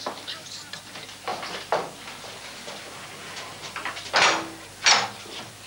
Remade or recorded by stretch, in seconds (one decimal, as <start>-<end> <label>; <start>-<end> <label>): 0.0-5.7 recorded